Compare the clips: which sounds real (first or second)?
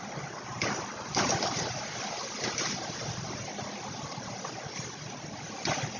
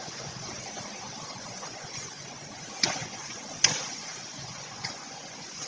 first